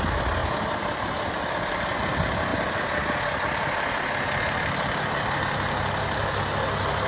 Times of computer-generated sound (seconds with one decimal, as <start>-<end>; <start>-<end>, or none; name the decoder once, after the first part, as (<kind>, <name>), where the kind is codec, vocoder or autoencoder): none